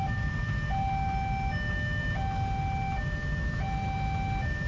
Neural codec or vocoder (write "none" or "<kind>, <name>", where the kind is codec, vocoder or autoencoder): none